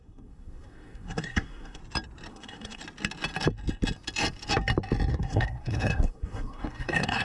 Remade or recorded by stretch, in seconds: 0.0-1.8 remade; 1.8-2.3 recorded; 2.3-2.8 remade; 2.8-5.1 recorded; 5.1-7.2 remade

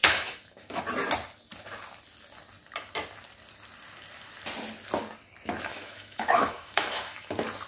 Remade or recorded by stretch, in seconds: 0.0-0.8 remade; 0.8-5.7 recorded; 5.7-7.3 remade; 7.3-7.7 recorded

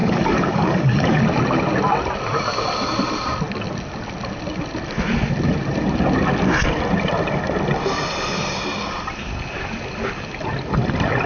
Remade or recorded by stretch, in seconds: 0.0-1.2 remade; 1.2-11.3 recorded

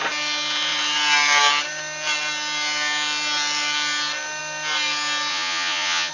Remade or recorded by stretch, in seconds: 0.0-5.3 recorded; 5.3-6.1 remade

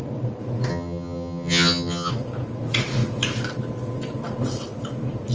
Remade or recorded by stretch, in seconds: 0.0-0.7 recorded; 0.7-2.1 remade; 2.1-5.3 recorded